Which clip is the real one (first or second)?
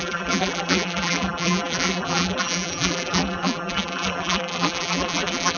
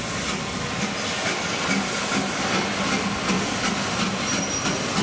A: second